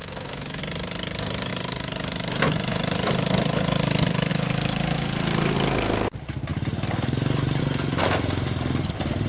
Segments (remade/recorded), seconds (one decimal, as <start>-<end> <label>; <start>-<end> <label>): 0.0-0.6 remade; 0.6-9.3 recorded